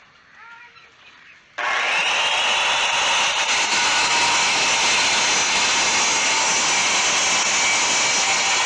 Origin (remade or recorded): recorded